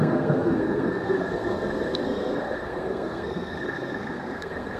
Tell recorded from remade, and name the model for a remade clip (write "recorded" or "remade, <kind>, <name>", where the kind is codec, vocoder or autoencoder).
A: remade, codec, SNAC